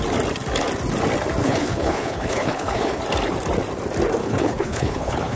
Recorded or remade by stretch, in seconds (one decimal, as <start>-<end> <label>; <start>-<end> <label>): 0.0-1.4 recorded; 1.4-3.0 remade; 3.0-4.2 recorded; 4.2-5.4 remade